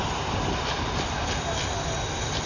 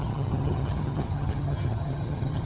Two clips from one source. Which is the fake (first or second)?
second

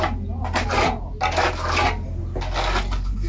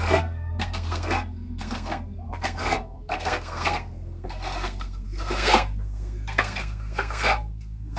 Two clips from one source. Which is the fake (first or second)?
second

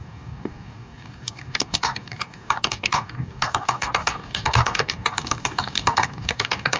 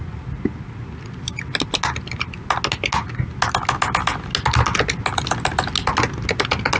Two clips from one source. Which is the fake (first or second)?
first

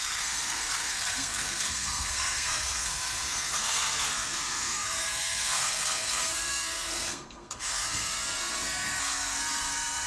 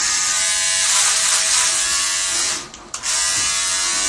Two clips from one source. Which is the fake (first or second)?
first